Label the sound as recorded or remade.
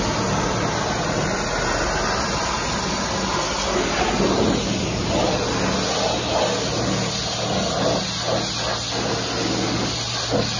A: recorded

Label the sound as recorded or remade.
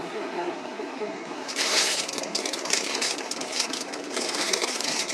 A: remade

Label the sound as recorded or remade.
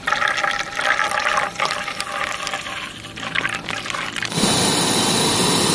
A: recorded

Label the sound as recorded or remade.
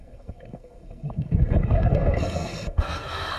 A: remade